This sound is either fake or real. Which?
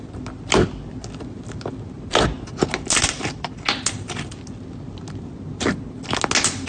real